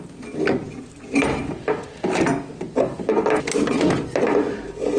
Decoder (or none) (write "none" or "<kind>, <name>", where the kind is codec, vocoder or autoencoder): none